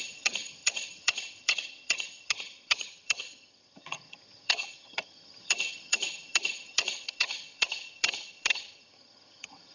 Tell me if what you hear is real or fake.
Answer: fake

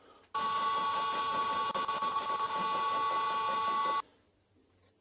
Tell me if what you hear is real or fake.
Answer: real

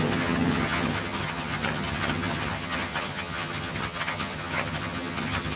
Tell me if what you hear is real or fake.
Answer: fake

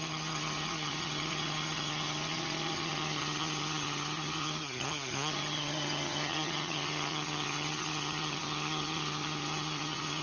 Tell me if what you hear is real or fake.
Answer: fake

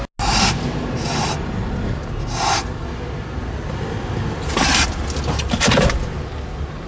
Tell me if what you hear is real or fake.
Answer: real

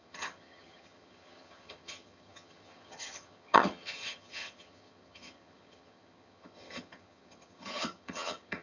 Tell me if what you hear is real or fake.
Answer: fake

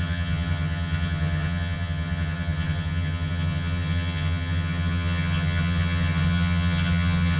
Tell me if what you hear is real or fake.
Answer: fake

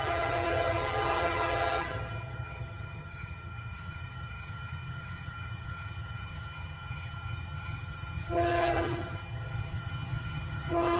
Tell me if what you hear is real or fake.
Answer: fake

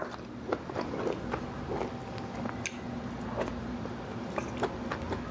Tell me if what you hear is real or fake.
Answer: real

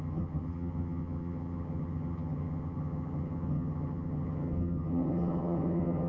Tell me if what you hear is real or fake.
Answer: fake